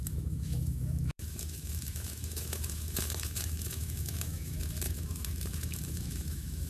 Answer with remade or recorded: remade